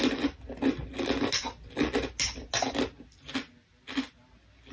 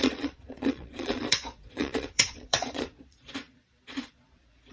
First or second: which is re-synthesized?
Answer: second